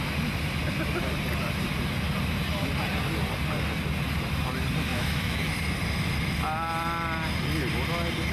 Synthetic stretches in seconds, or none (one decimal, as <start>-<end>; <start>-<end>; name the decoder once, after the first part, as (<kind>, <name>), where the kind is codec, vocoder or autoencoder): 4.9-5.5 (autoencoder, DAC-VAE)